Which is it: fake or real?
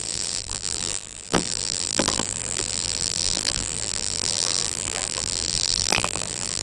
fake